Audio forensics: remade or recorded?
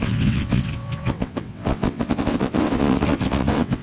remade